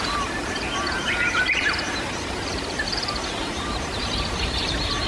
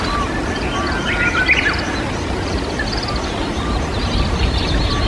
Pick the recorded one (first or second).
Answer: second